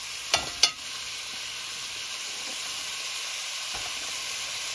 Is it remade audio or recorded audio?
recorded